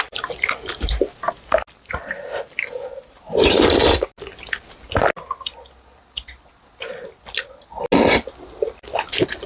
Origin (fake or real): real